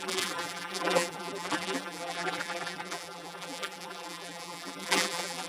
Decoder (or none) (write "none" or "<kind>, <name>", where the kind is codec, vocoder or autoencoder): vocoder, BigVGAN v2